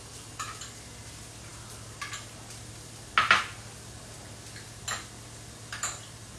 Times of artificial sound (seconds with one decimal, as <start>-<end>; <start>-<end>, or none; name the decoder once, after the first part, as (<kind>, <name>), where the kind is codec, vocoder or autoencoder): none